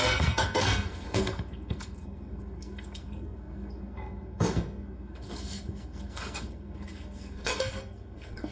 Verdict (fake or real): fake